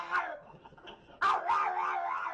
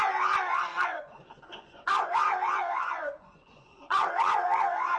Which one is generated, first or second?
second